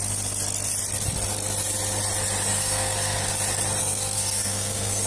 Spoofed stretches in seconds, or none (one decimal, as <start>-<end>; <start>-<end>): 2.5-3.2; 3.8-5.1